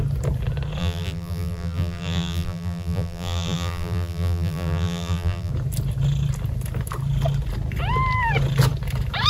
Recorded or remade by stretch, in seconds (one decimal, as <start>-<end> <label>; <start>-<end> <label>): 0.0-0.8 recorded; 0.8-5.5 remade; 5.5-9.3 recorded